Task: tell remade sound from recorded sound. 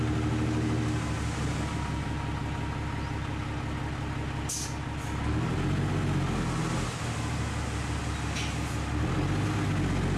recorded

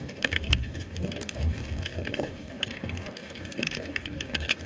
remade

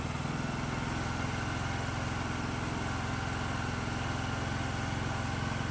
recorded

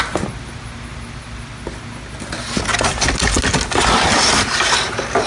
recorded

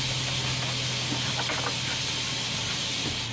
recorded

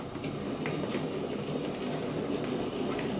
recorded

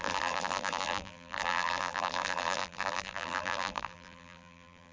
remade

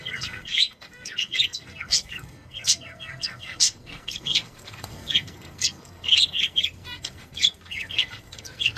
remade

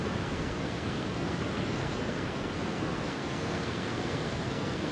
remade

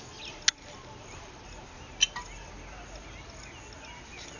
recorded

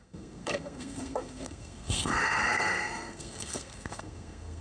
remade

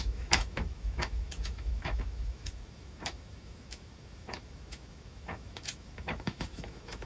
remade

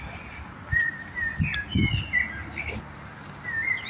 recorded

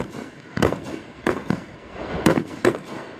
remade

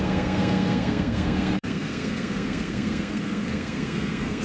remade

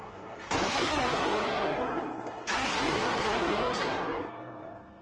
remade